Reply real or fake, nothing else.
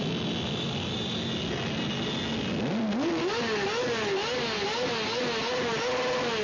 real